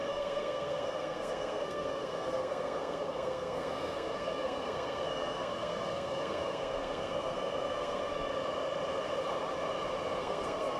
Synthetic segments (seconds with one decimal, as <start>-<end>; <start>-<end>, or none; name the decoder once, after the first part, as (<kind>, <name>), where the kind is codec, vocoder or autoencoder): 0.0-8.3 (codec, SNAC); 10.2-10.8